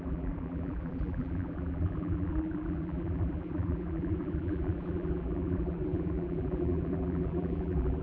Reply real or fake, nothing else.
fake